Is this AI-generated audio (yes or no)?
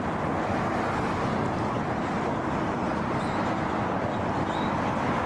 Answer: no